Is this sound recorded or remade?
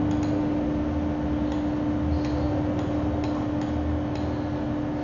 recorded